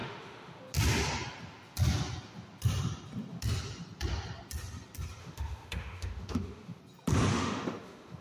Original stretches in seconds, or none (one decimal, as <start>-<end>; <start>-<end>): 0.6-5.2; 6.8-7.3